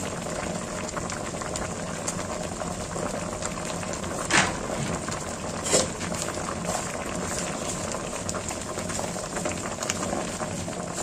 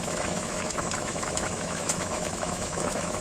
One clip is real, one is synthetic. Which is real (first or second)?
first